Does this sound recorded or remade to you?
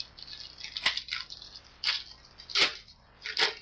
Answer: recorded